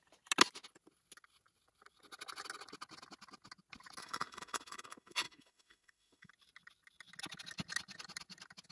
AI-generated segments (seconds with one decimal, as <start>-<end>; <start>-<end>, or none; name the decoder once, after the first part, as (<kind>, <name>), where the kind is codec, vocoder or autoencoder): 4.0-6.3 (autoencoder, DAC-VAE)